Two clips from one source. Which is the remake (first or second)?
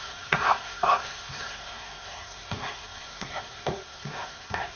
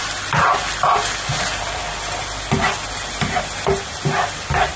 first